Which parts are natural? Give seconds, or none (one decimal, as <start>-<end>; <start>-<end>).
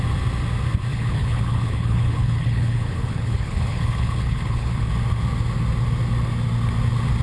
0.0-0.9; 4.9-7.2